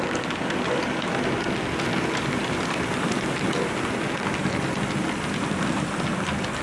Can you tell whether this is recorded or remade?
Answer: recorded